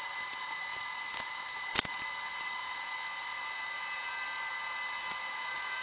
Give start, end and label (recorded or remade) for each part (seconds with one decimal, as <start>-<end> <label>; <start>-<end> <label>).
0.0-5.8 recorded